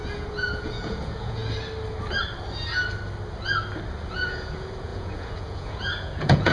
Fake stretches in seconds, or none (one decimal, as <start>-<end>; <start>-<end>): 0.0-1.4; 4.1-6.5